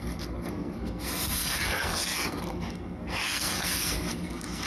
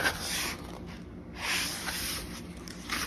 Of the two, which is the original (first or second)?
second